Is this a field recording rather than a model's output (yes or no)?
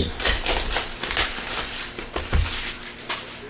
yes